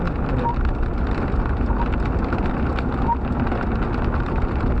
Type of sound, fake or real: real